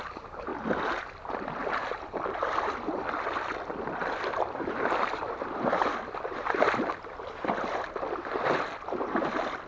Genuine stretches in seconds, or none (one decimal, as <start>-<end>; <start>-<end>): 0.0-4.0; 7.7-9.7